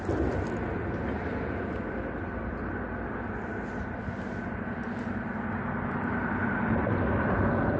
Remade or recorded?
recorded